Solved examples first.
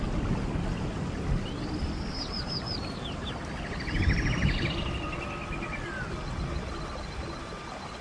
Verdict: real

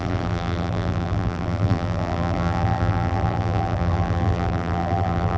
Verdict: fake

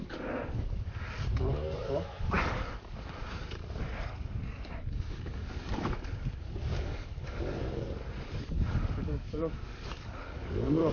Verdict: fake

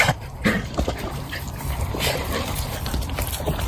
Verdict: fake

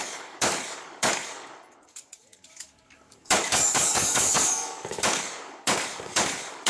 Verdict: fake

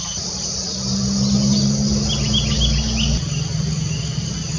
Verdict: real